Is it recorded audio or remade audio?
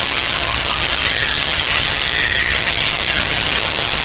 remade